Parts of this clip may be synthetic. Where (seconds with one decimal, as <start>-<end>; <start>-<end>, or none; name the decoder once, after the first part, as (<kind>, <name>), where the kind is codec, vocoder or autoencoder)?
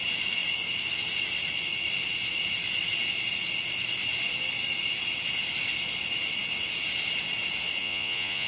7.8-8.5 (vocoder, Vocos)